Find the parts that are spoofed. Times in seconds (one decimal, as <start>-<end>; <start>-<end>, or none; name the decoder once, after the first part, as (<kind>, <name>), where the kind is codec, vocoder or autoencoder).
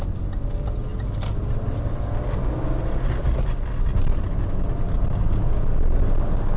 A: none